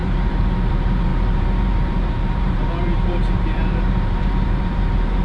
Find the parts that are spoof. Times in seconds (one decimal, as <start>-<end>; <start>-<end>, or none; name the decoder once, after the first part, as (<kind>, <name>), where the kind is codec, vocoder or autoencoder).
0.0-5.2 (vocoder, BigVGAN v2)